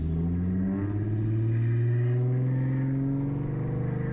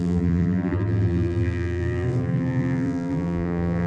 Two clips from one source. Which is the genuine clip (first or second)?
first